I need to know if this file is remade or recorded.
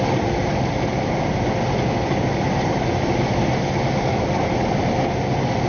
recorded